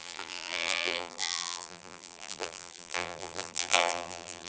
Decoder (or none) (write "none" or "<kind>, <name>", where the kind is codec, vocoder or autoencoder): vocoder, BigVGAN v2